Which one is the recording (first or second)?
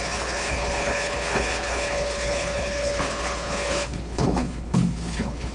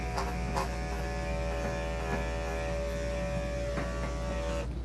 second